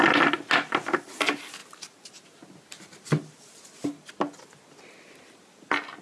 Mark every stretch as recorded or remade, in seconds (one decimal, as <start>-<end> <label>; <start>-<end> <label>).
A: 0.0-6.0 recorded